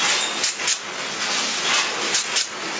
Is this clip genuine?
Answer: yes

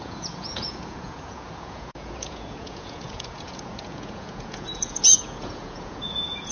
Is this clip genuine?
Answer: no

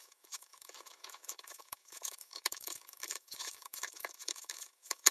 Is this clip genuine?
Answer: no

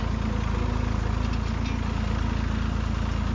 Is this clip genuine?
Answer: yes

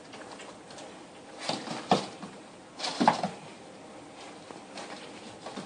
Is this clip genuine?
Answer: yes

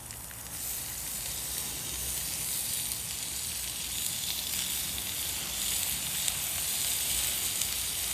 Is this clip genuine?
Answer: yes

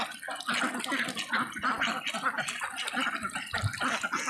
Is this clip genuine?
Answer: yes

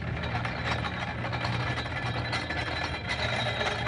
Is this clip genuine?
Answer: yes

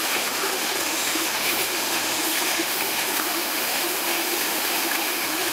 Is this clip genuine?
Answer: no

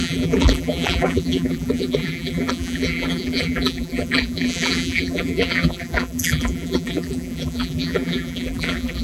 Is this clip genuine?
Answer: no